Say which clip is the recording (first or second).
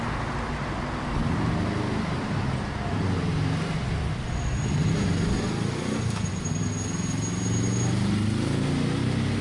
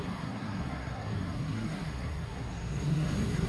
first